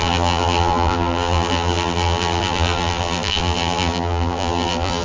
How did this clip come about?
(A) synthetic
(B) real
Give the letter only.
A